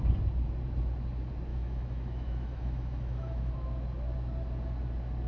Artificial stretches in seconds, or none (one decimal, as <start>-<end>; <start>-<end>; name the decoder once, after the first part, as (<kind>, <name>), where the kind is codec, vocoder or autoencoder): 1.5-3.5 (autoencoder, DAC-VAE)